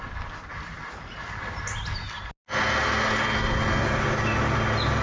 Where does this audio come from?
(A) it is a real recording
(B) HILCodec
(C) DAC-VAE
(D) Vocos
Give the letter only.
A